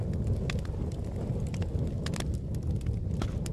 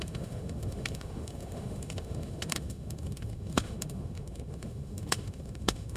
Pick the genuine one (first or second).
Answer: first